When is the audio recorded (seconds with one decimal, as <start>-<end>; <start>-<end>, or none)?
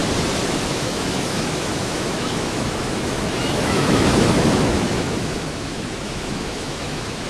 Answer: 0.0-0.7